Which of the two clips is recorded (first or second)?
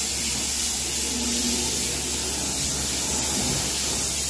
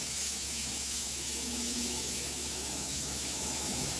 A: first